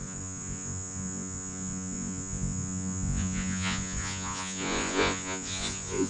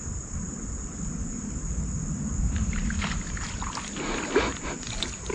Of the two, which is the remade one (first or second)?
first